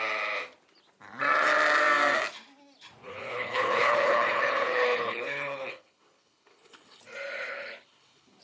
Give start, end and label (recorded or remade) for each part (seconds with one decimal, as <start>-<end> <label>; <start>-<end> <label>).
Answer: 0.0-3.0 recorded; 3.0-7.0 remade; 7.0-7.5 recorded; 7.5-8.4 remade